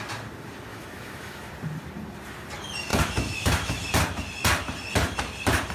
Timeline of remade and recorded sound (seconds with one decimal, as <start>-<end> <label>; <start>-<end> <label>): 0.0-0.7 recorded; 0.7-1.5 remade; 1.5-2.9 recorded; 2.9-3.9 remade; 3.9-5.7 recorded